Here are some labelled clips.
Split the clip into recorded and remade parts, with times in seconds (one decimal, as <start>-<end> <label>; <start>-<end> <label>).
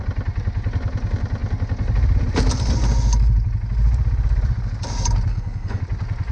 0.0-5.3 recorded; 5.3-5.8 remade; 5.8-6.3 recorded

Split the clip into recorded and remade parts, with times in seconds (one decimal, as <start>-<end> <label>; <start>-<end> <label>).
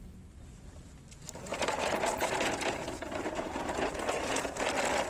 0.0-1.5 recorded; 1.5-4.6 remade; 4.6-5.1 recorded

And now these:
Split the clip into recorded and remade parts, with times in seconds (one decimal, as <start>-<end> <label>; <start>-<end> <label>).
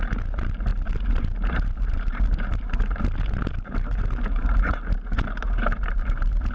0.0-6.5 remade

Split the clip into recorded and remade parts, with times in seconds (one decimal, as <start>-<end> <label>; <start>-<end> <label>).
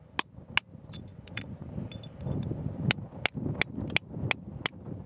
0.0-1.1 recorded; 1.1-1.7 remade; 1.7-5.1 recorded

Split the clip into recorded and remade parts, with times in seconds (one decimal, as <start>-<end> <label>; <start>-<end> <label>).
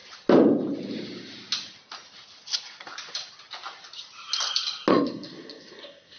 0.0-4.9 recorded; 4.9-6.2 remade